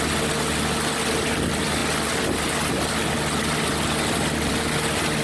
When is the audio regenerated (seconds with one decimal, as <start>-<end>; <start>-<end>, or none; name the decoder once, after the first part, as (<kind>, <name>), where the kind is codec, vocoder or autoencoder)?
none